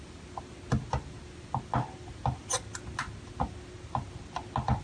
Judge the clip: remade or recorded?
recorded